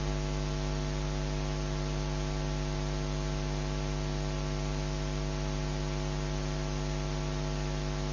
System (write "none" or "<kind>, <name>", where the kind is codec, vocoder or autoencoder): none